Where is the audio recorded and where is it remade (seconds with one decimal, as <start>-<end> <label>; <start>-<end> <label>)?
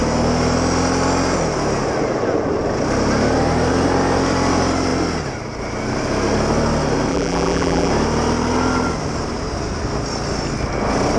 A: 0.0-7.1 recorded; 7.1-7.9 remade; 7.9-11.2 recorded